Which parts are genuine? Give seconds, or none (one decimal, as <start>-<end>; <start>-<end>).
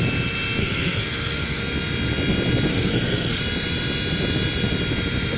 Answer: 0.0-0.6; 1.6-2.7; 3.4-5.4